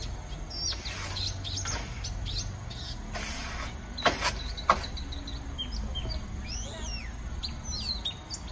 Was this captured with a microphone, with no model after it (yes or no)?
yes